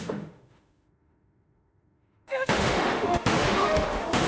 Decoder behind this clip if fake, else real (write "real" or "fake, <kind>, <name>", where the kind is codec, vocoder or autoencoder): fake, autoencoder, DAC-VAE